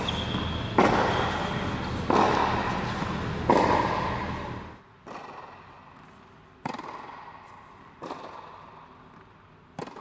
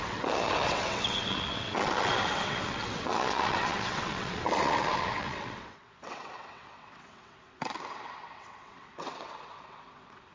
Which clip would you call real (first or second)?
first